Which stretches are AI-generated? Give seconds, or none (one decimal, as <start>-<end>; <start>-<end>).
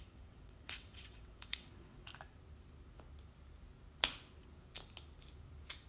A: 0.0-2.1